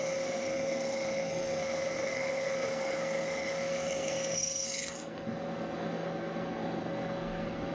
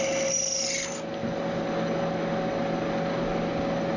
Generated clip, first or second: first